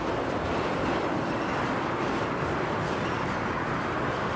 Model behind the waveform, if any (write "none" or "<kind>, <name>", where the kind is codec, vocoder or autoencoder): none